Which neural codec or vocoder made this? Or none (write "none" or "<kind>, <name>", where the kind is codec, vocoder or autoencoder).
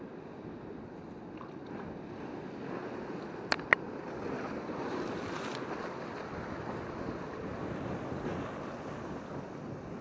none